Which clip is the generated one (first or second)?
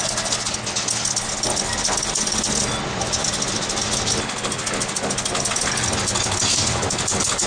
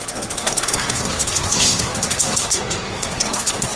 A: second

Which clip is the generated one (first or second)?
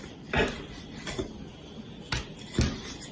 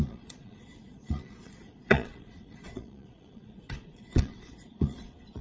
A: second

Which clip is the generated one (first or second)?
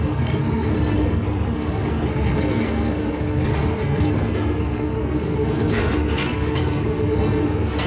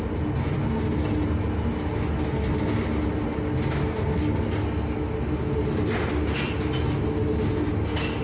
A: first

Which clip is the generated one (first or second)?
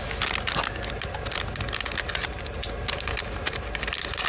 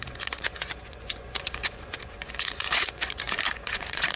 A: second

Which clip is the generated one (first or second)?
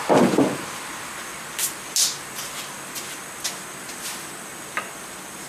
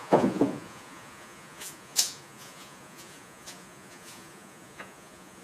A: second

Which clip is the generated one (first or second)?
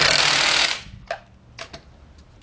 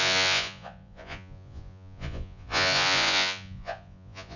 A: second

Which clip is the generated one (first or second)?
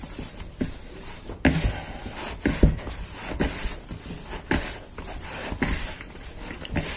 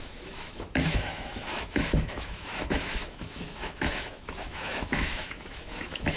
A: second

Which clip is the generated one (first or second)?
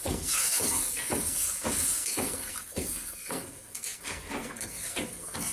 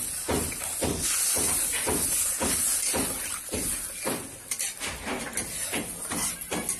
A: first